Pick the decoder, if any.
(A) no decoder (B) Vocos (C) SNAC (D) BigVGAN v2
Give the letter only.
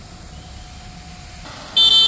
A